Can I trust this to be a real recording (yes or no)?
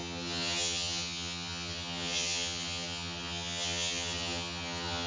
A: no